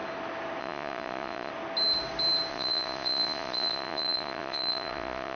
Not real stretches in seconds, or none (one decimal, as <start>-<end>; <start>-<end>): 0.6-1.5; 2.5-5.4